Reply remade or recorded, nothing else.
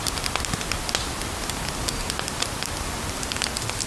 recorded